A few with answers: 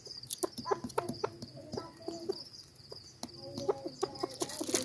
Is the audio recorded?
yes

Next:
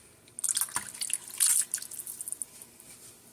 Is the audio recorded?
yes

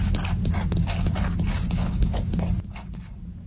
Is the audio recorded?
yes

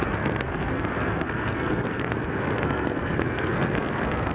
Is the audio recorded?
no